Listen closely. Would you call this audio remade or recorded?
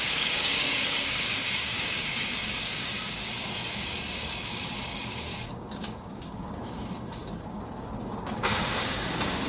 remade